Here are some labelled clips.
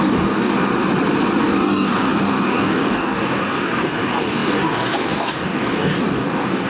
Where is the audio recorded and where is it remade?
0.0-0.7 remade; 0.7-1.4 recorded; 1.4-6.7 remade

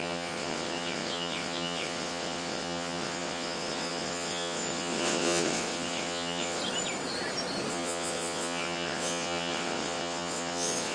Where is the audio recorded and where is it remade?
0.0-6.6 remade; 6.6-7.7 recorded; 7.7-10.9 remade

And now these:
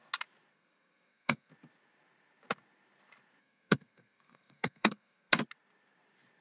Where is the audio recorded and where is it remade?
0.0-0.5 recorded; 0.5-1.5 remade; 1.5-3.4 recorded; 3.4-5.3 remade; 5.3-6.4 recorded